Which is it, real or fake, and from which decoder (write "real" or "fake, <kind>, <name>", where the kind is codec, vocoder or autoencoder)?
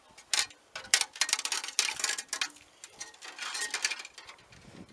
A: real